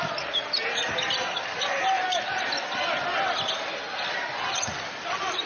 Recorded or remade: recorded